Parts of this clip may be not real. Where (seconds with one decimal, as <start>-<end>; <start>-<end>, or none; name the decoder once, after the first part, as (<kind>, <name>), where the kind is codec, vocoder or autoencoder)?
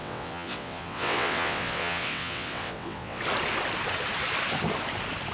0.0-3.2 (vocoder, WaveNeXt)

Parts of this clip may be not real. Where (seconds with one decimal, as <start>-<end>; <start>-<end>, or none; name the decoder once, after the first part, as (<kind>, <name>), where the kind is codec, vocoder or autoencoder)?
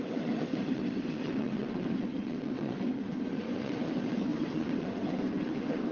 0.0-5.9 (vocoder, WaveNeXt)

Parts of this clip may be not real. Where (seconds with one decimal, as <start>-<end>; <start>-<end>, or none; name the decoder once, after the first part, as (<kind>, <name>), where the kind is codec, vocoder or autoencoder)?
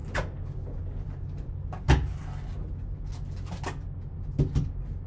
none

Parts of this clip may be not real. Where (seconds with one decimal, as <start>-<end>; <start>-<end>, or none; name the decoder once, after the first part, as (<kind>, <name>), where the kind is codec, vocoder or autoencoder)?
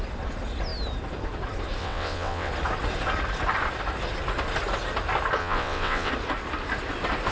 1.8-2.5 (vocoder, WaveNeXt); 5.4-6.1